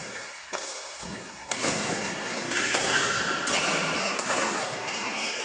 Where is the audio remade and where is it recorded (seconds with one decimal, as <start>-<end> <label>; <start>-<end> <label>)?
0.0-3.2 remade; 3.2-4.0 recorded; 4.0-5.4 remade